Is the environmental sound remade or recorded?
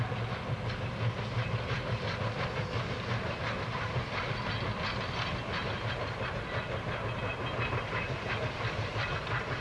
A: recorded